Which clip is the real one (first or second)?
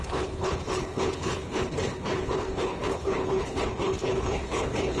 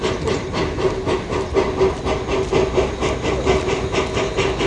second